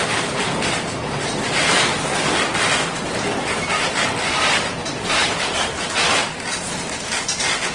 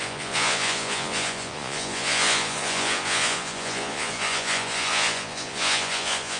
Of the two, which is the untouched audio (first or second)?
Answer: first